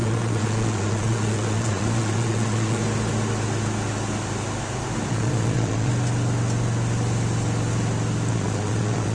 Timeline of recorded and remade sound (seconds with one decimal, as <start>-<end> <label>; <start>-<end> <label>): 0.0-2.8 remade; 2.8-5.1 recorded; 5.1-5.9 remade; 5.9-8.3 recorded; 8.3-9.1 remade